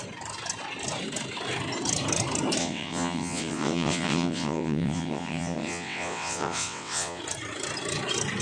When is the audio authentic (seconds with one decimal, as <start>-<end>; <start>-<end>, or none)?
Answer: 0.0-2.6; 7.2-8.4